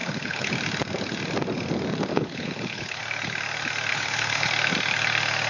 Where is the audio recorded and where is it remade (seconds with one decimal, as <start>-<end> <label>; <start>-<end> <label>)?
0.0-0.5 remade; 0.5-2.1 recorded; 2.1-3.0 remade; 3.0-3.9 recorded; 3.9-4.5 remade; 4.5-5.5 recorded